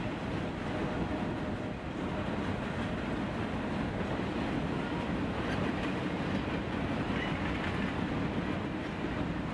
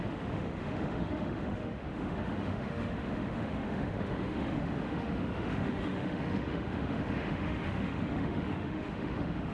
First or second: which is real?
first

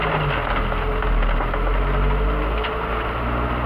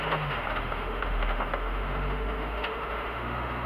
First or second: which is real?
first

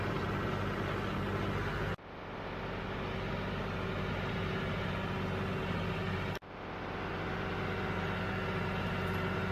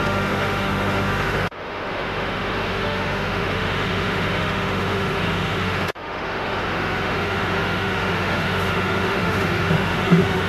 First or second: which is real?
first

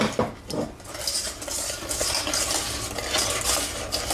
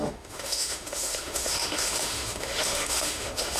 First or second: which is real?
first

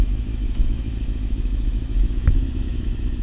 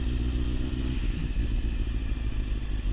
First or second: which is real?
second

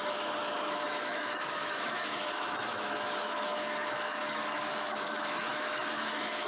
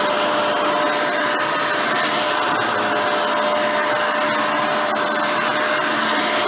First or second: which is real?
second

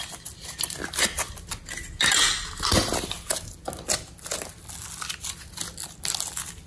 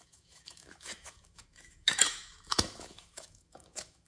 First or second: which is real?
first